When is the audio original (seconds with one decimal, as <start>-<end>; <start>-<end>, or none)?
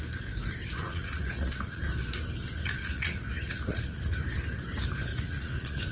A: 0.0-0.8; 1.8-2.8; 4.0-5.1